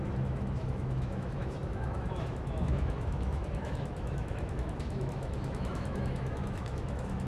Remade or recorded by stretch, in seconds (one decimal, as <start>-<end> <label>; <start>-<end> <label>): 0.0-7.3 remade